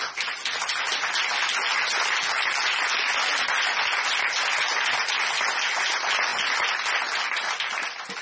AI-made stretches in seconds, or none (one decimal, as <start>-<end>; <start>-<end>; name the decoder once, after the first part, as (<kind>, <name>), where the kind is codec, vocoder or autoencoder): none